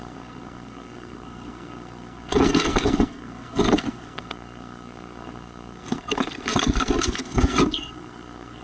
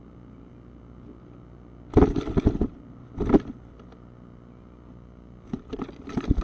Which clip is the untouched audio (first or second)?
second